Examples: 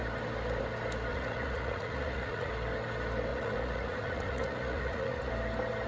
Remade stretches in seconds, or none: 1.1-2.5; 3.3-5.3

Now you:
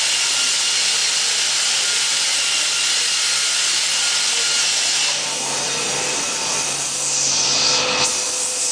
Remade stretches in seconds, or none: none

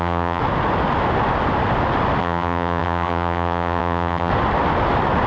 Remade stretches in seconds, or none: 0.0-0.4; 2.2-4.3